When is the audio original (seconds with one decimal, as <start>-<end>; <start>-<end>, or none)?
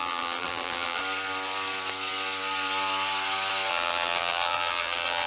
1.0-3.7